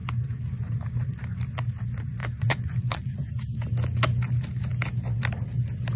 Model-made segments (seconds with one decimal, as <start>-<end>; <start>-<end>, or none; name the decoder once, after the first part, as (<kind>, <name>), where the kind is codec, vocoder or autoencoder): 2.2-3.3 (vocoder, Vocos)